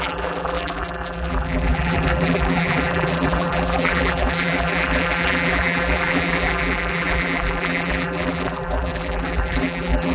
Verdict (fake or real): fake